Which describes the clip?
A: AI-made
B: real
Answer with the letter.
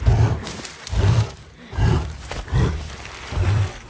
A